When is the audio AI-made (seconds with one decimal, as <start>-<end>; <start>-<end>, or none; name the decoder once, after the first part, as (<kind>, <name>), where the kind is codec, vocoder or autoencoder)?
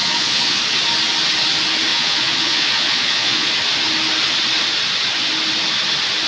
0.0-0.6 (vocoder, Vocos); 1.9-3.5